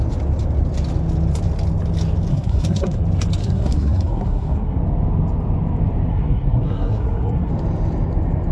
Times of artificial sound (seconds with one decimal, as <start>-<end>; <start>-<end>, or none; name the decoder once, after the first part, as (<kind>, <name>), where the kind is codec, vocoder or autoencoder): 2.3-3.0 (codec, SNAC); 3.4-4.8; 6.1-7.5